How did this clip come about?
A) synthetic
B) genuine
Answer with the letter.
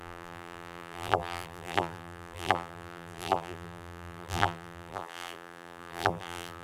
A